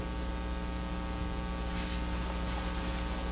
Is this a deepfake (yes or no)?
no